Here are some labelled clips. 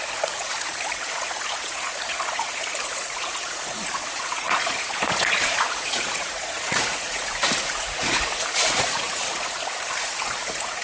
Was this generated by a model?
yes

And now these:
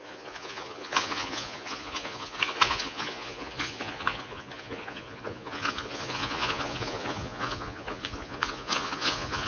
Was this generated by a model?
yes